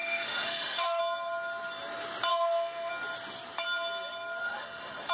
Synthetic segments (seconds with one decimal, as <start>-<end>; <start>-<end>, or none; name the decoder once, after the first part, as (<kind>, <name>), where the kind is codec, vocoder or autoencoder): 0.0-1.0 (autoencoder, DAC-VAE); 2.3-2.9; 4.4-5.1